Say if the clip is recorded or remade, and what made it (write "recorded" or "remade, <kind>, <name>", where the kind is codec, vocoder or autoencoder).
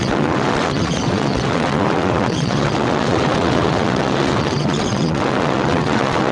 remade, vocoder, WaveNeXt